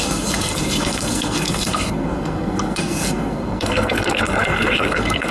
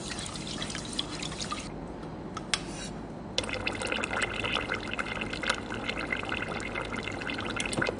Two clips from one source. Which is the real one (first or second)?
second